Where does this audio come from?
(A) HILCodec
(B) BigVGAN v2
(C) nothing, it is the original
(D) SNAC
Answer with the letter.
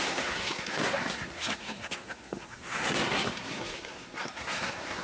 D